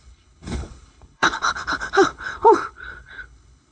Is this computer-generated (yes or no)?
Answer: yes